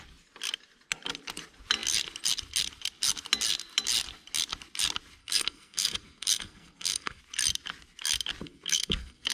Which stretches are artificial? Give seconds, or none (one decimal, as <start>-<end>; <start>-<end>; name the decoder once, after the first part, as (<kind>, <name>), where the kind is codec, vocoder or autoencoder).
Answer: 5.2-7.2 (codec, SNAC); 8.4-9.3